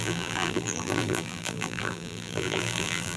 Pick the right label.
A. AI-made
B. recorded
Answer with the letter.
A